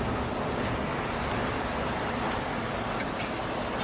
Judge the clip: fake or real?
real